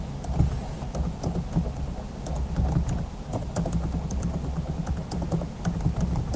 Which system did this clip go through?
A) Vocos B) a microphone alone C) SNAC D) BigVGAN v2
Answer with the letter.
B